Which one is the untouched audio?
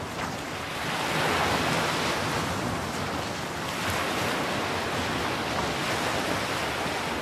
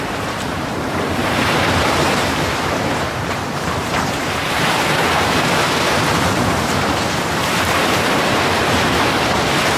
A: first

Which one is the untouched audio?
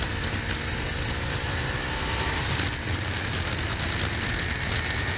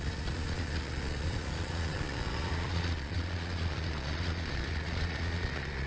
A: first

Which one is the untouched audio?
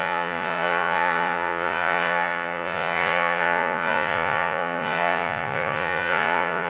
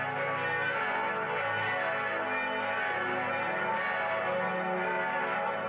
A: second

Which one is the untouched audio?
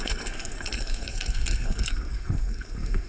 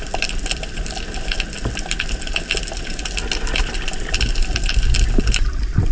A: second